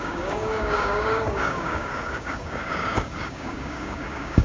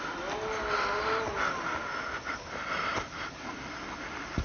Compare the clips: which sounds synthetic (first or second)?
first